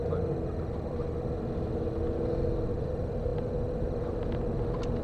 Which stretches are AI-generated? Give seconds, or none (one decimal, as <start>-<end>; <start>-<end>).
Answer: none